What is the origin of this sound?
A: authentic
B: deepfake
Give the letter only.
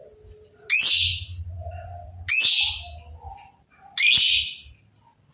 A